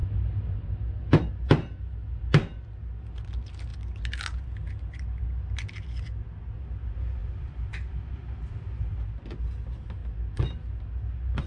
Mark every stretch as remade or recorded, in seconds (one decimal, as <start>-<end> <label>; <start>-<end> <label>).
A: 0.0-7.2 recorded; 7.2-8.8 remade; 8.8-11.5 recorded